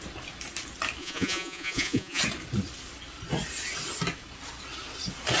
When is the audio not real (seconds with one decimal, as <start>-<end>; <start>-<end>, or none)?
1.0-2.2